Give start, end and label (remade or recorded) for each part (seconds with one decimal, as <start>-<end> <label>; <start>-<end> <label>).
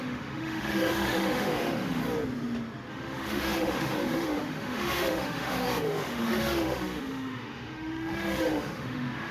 0.0-2.0 remade; 2.0-2.9 recorded; 2.9-9.3 remade